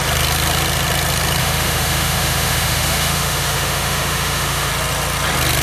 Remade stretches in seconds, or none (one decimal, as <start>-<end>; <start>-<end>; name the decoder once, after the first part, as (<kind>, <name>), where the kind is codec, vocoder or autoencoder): 1.4-4.7 (autoencoder, DAC-VAE)